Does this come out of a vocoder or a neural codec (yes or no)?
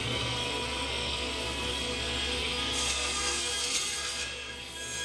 yes